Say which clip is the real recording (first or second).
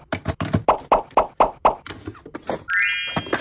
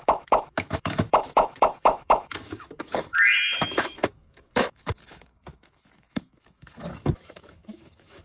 first